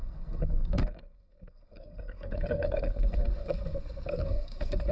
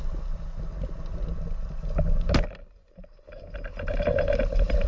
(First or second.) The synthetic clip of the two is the first